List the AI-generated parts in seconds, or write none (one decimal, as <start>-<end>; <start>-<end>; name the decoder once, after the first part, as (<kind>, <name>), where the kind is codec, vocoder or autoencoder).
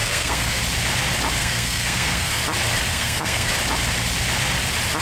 0.0-0.6 (codec, SNAC); 1.4-2.4; 2.9-3.5